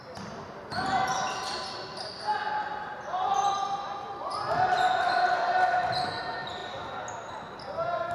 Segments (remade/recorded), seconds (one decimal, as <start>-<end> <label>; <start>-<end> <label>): 0.0-8.1 recorded